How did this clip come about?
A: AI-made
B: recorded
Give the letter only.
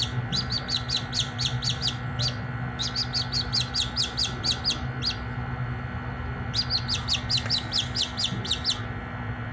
B